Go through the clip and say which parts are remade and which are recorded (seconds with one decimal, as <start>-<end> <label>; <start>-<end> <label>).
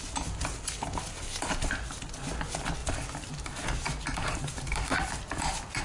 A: 0.0-2.8 recorded; 2.8-5.8 remade